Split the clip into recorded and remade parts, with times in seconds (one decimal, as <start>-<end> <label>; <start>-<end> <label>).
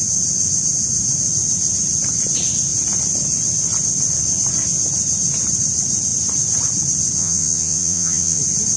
0.0-7.2 recorded; 7.2-8.4 remade; 8.4-8.8 recorded